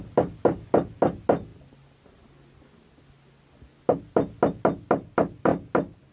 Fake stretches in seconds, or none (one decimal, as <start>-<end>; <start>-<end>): none